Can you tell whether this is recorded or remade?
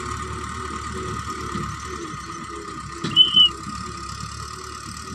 recorded